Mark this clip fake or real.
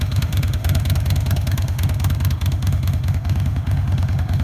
fake